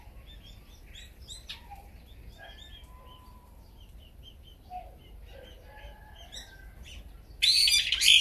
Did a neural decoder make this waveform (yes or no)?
no